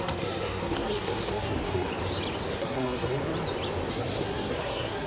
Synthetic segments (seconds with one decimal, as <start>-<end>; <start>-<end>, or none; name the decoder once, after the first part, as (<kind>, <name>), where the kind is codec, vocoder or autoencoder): 0.0-1.9 (codec, SNAC); 2.5-3.2; 3.9-5.1